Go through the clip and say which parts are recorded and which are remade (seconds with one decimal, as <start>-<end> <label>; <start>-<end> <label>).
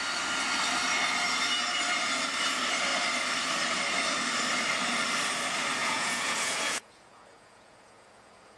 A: 0.0-5.8 recorded; 5.8-8.6 remade